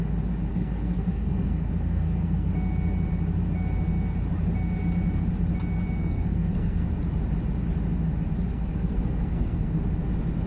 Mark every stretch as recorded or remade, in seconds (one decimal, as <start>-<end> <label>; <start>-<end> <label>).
0.0-0.5 recorded; 0.5-2.5 remade; 2.5-6.0 recorded; 6.0-6.9 remade; 6.9-8.5 recorded; 8.5-9.8 remade; 9.8-10.5 recorded